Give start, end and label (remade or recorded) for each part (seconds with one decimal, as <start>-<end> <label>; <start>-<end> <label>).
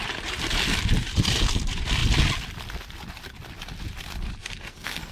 0.0-4.4 recorded; 4.4-5.1 remade